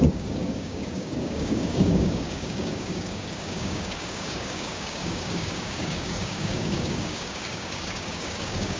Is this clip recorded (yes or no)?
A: no